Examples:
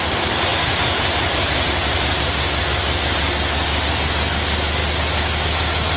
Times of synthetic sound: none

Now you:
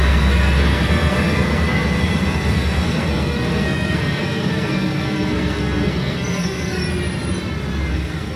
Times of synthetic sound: 0.0-6.8; 7.9-8.4

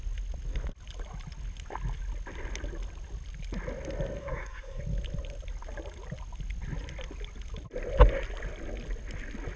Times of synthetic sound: 4.2-4.8